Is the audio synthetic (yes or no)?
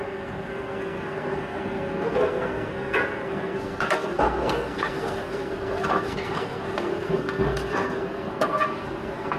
yes